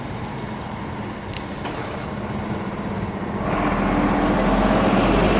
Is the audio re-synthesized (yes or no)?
no